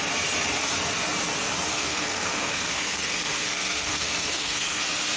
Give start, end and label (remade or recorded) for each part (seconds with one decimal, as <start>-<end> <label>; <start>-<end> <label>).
0.0-1.7 recorded; 1.7-4.8 remade; 4.8-5.2 recorded